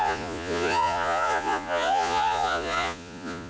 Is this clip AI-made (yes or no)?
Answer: yes